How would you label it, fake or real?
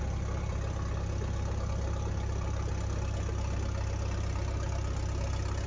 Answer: real